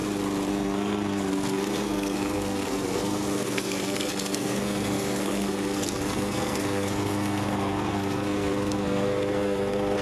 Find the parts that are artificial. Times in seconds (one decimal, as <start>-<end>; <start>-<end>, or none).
0.5-10.0